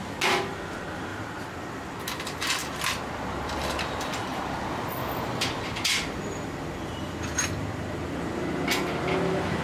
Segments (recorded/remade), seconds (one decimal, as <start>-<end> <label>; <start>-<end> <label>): 0.0-1.1 recorded; 1.1-2.0 remade; 2.0-2.6 recorded; 2.6-3.8 remade; 3.8-4.3 recorded; 4.3-8.1 remade; 8.1-9.6 recorded